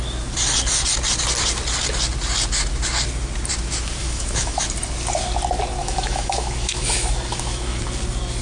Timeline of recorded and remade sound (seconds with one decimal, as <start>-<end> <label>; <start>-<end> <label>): 0.0-4.0 recorded; 4.0-4.6 remade; 4.6-5.8 recorded; 5.8-7.8 remade; 7.8-8.4 recorded